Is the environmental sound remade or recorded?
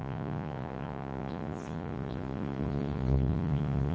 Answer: remade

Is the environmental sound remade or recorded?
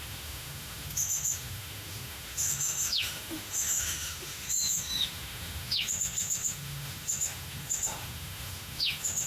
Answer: remade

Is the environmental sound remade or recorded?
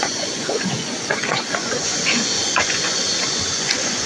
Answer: remade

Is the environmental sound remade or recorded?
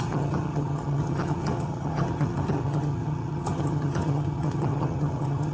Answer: remade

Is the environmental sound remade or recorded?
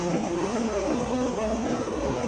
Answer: remade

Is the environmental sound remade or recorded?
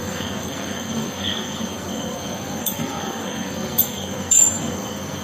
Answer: remade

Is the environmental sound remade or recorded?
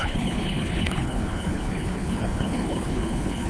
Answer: remade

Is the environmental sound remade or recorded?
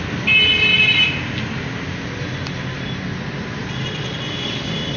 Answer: recorded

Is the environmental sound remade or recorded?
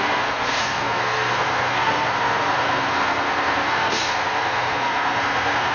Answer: remade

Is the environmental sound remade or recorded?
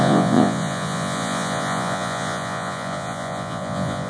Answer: remade